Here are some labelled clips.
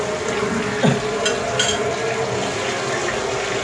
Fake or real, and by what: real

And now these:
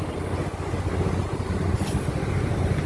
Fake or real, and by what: real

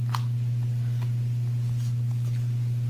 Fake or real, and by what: real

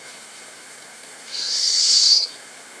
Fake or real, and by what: fake, codec, SNAC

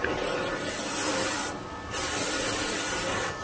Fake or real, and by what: real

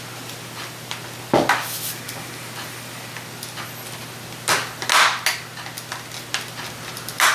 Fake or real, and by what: real